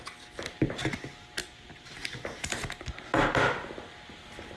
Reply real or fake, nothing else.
real